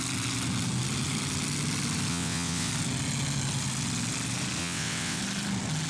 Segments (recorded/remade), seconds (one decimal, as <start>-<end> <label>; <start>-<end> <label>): 0.0-2.1 recorded; 2.1-2.7 remade; 2.7-4.6 recorded; 4.6-5.2 remade; 5.2-5.9 recorded

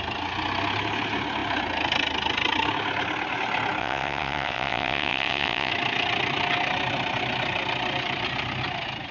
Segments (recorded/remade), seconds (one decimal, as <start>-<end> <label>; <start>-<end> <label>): 0.0-3.8 recorded; 3.8-5.7 remade; 5.7-9.1 recorded